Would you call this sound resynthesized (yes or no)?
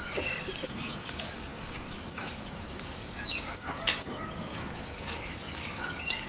yes